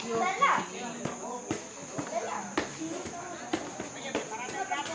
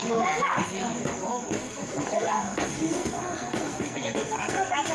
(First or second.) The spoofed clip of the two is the second